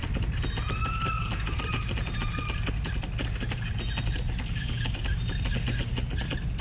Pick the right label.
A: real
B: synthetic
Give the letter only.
A